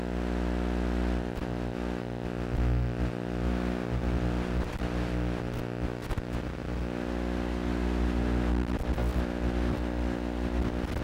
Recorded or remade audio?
recorded